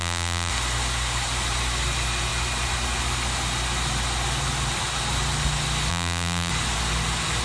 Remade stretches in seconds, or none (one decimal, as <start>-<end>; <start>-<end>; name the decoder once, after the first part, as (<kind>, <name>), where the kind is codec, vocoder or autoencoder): 0.0-0.5 (vocoder, BigVGAN v2); 5.9-6.5